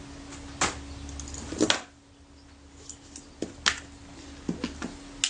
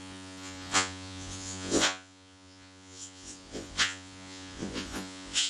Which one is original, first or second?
first